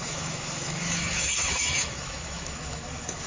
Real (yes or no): no